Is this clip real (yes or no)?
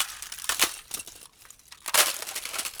no